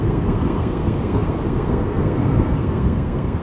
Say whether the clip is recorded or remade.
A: remade